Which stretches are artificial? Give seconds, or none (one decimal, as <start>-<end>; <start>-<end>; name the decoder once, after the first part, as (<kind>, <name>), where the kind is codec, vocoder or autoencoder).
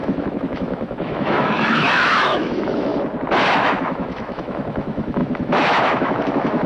0.0-2.9 (autoencoder, DAC-VAE); 3.5-6.7